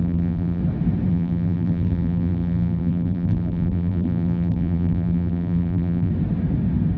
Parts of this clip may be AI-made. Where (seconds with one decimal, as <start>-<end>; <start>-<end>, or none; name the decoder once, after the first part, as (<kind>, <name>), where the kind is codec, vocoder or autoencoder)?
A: 0.0-0.6 (vocoder, BigVGAN v2); 1.1-6.1